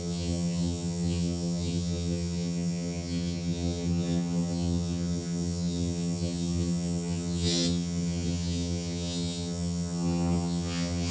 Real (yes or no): no